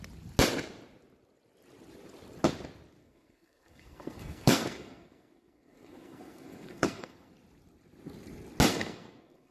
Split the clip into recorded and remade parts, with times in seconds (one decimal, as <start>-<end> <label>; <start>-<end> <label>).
0.0-3.0 recorded; 3.0-7.3 remade; 7.3-8.7 recorded; 8.7-9.5 remade

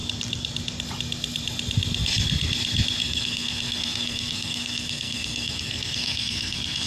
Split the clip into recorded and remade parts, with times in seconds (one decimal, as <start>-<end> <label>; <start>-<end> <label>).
0.0-3.0 recorded; 3.0-6.9 remade

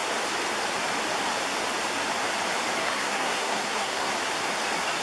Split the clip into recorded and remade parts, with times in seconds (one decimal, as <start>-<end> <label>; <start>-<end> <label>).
0.0-2.8 recorded; 2.8-4.1 remade; 4.1-5.0 recorded

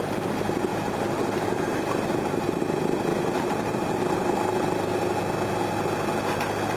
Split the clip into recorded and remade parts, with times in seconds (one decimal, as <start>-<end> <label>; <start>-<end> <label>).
0.0-0.7 recorded; 0.7-2.6 remade; 2.6-3.1 recorded; 3.1-4.3 remade; 4.3-6.8 recorded

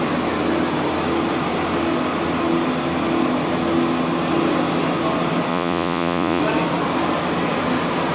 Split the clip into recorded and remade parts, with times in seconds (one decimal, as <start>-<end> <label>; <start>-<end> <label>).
0.0-5.5 recorded; 5.5-6.4 remade; 6.4-8.1 recorded

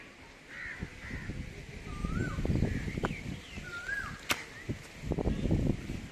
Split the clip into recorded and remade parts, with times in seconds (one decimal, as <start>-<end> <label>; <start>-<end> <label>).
0.0-6.1 recorded

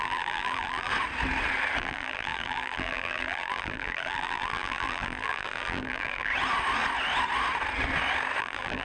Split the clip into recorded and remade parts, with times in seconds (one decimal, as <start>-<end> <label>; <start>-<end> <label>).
0.0-0.9 remade; 0.9-1.8 recorded; 1.8-6.3 remade; 6.3-8.4 recorded; 8.4-8.8 remade

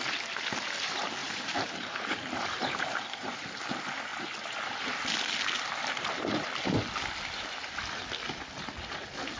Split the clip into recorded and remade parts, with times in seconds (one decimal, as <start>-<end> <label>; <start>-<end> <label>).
0.0-1.2 recorded; 1.2-3.4 remade; 3.4-4.1 recorded; 4.1-4.9 remade; 4.9-9.4 recorded